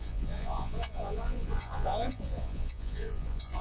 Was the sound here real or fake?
fake